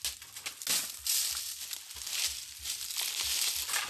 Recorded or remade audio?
recorded